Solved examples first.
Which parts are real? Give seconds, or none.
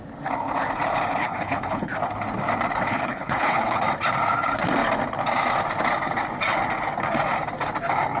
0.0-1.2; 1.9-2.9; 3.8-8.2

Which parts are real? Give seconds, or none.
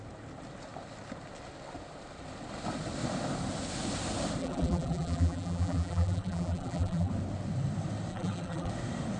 0.0-4.4; 7.1-8.1; 8.7-9.2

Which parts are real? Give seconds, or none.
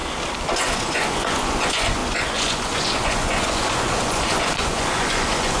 0.0-0.6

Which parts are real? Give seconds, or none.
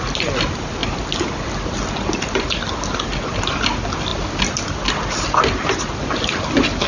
0.0-6.9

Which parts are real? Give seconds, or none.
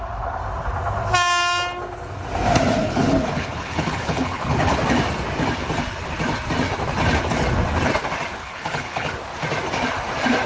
0.0-2.8; 4.8-8.4; 9.1-10.5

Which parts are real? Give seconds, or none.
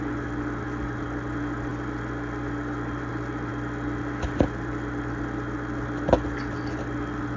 0.0-7.4